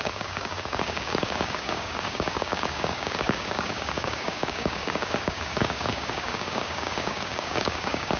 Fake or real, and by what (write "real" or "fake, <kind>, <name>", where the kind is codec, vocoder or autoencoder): fake, codec, DAC